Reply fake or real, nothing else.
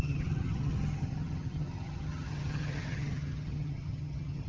fake